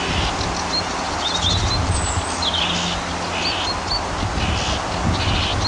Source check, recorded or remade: recorded